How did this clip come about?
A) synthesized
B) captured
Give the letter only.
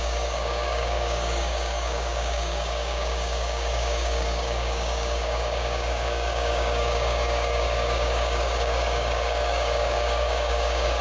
A